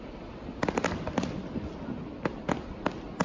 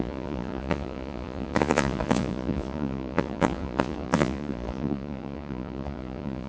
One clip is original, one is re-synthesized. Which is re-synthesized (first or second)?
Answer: second